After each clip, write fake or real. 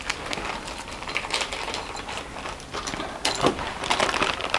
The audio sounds fake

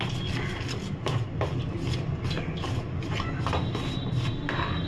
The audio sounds real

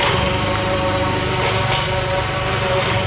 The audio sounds fake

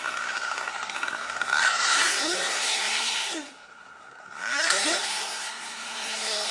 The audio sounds fake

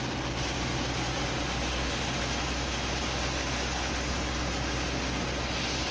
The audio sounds real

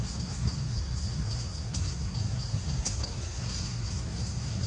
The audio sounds fake